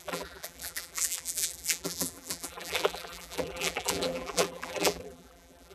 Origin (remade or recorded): remade